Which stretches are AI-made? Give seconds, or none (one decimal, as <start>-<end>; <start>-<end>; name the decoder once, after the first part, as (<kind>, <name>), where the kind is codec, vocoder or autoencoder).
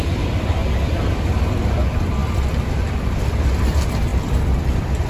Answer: 0.0-0.6 (vocoder, BigVGAN v2); 1.3-5.1